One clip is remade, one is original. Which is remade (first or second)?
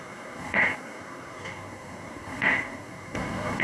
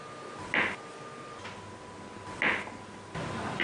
first